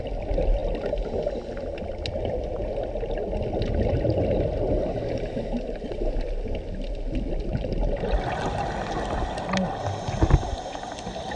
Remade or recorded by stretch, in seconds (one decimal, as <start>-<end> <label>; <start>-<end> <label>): 0.0-11.4 recorded